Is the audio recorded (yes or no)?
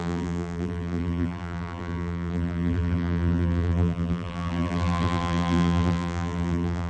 no